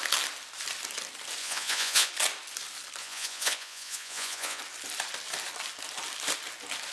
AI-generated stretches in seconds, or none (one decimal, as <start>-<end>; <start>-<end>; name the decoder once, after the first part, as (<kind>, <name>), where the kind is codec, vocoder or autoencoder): 1.4-2.1 (vocoder, Vocos); 3.0-4.6